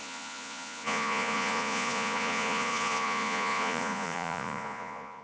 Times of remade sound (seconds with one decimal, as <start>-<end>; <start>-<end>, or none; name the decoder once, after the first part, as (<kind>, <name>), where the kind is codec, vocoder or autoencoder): 0.0-5.2 (vocoder, Vocos)